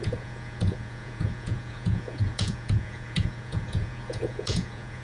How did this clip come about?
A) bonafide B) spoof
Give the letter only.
B